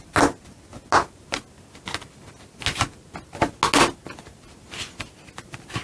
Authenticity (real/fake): real